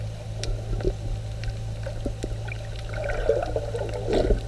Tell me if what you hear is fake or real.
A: real